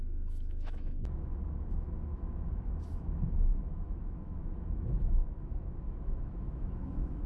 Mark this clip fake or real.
fake